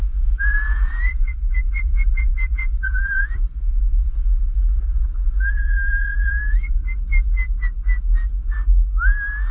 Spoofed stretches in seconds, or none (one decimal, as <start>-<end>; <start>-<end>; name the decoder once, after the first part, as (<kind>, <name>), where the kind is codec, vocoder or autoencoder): 0.0-6.8 (vocoder, Vocos)